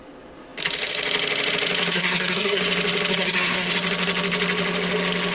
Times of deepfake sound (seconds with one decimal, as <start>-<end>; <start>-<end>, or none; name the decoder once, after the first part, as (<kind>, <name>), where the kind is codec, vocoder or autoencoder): 1.9-2.6 (codec, SNAC); 3.1-3.7